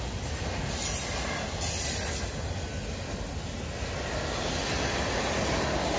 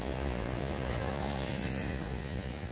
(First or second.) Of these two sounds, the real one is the first